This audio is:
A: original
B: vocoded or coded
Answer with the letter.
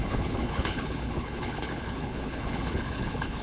B